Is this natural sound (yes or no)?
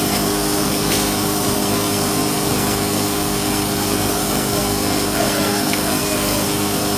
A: no